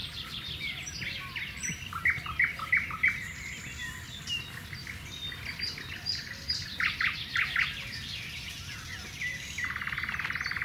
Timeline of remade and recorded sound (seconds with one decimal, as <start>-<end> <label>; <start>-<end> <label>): 0.0-10.6 recorded